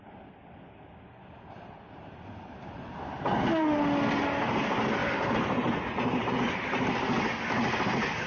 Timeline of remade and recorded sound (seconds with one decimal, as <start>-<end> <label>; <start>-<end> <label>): 0.0-5.0 recorded; 5.0-6.3 remade; 6.3-8.3 recorded